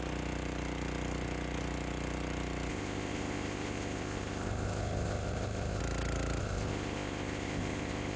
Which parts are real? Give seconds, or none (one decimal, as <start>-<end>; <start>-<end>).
0.0-2.7; 5.8-6.4